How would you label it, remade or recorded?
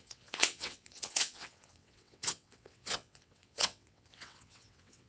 remade